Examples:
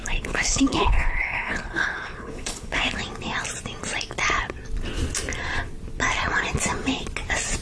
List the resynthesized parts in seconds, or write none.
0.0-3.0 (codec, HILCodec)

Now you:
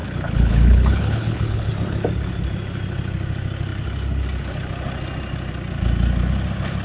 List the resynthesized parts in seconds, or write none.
0.0-1.7 (codec, HILCodec)

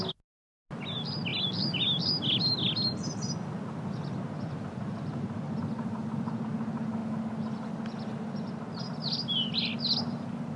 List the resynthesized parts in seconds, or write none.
none

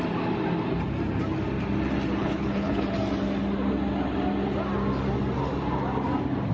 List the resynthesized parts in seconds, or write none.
2.2-2.9 (codec, HILCodec)

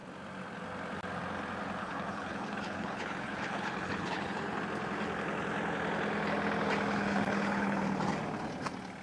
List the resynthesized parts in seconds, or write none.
1.8-4.6 (codec, HILCodec); 6.9-7.8

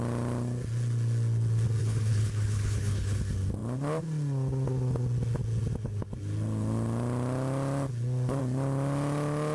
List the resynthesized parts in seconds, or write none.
1.8-3.2 (codec, HILCodec)